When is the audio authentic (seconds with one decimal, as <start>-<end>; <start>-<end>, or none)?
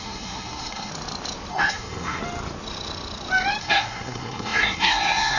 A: 0.9-1.5; 2.2-3.6